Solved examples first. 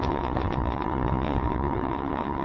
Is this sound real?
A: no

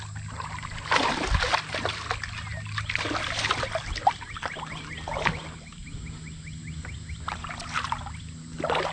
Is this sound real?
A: yes